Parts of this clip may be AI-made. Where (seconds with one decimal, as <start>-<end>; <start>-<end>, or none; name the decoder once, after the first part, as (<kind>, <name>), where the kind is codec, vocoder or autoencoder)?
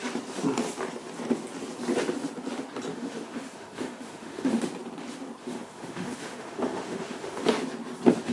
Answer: 2.9-4.6 (autoencoder, DAC-VAE); 5.4-7.4